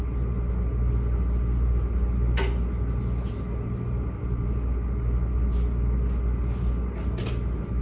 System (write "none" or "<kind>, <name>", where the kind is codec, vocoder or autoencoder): none